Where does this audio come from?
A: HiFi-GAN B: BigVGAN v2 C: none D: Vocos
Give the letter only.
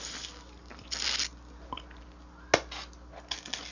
C